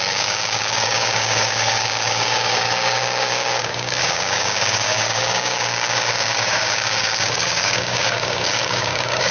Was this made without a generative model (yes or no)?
no